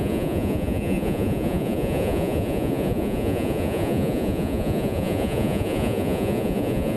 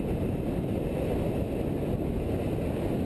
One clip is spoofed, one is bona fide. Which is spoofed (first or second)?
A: first